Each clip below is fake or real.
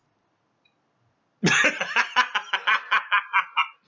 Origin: real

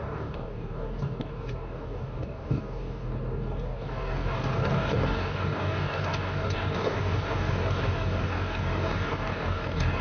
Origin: fake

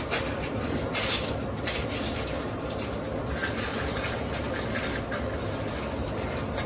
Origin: real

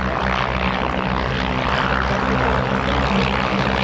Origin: real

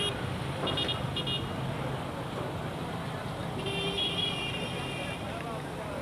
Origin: real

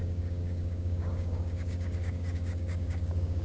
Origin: fake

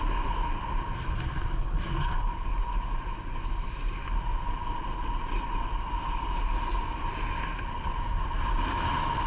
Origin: real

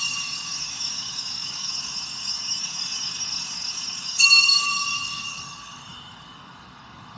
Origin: fake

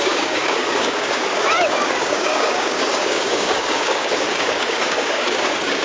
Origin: fake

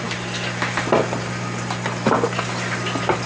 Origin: real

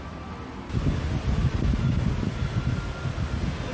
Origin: real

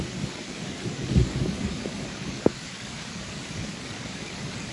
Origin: fake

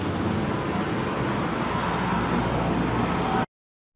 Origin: real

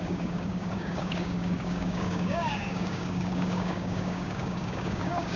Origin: fake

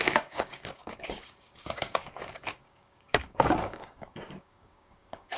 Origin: fake